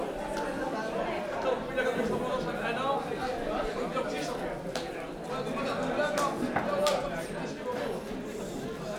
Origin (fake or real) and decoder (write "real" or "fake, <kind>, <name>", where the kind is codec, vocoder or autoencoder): real